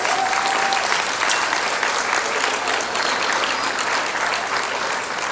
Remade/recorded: recorded